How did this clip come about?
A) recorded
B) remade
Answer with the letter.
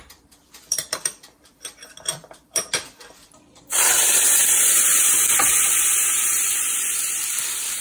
B